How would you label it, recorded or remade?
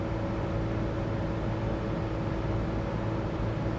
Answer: recorded